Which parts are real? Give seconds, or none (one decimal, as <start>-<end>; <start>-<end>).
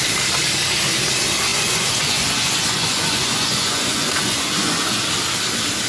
0.0-1.5; 5.0-5.9